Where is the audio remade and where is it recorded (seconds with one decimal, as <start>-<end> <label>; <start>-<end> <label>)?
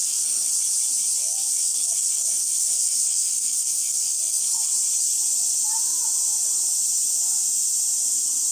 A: 0.0-0.5 remade; 0.5-1.2 recorded; 1.2-4.7 remade; 4.7-8.5 recorded